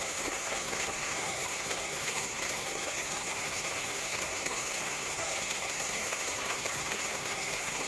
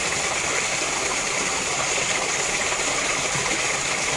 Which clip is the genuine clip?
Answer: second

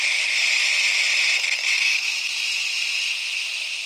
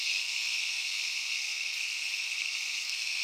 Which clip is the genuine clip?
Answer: first